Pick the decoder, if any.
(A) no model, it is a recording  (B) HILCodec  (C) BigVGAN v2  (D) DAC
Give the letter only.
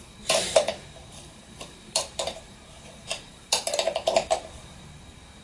C